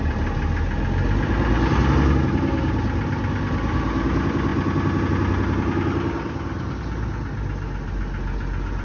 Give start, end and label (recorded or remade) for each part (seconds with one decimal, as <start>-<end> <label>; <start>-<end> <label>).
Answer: 0.0-8.8 recorded